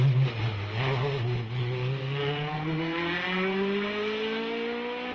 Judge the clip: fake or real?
real